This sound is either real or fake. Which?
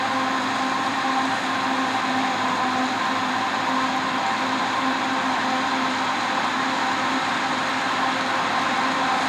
real